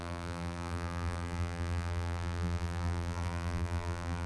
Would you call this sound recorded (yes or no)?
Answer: no